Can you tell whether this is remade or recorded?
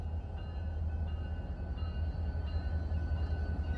recorded